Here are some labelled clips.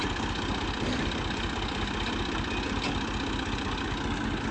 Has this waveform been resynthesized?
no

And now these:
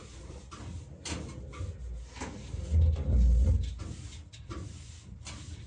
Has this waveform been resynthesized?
no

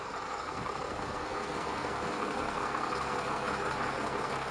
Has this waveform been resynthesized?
yes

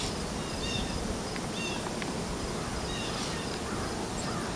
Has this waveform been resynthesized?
no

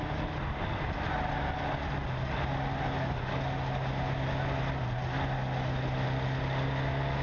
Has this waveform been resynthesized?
no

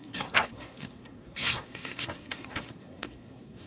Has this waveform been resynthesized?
yes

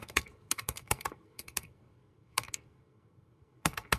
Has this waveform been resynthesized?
yes